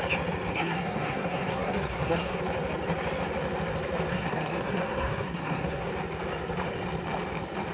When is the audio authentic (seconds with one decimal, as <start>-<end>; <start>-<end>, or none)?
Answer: 0.0-0.5; 2.4-4.1; 5.9-7.7